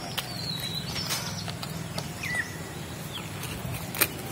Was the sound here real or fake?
real